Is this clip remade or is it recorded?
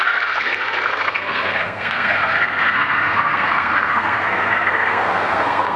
remade